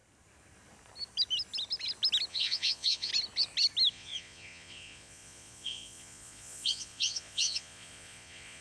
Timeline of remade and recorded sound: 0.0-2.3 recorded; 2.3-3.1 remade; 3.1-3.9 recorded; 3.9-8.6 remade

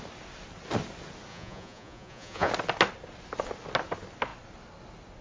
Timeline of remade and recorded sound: 0.0-1.3 recorded; 1.3-2.5 remade; 2.5-5.2 recorded

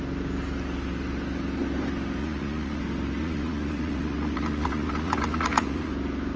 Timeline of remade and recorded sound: 0.0-2.2 recorded; 2.2-2.8 remade; 2.8-3.2 recorded; 3.2-5.9 remade; 5.9-6.4 recorded